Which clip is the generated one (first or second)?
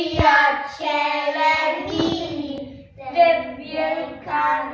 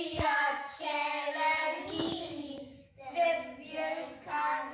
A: second